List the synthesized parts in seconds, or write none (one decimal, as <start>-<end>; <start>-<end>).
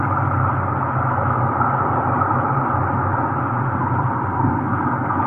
none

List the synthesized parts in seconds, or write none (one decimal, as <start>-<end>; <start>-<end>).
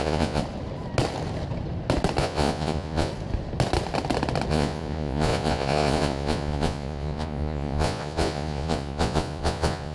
0.0-0.4; 2.2-3.1; 4.5-9.9